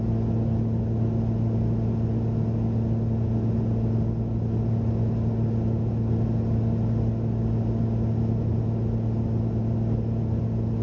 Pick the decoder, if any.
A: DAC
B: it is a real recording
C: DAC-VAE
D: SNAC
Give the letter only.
B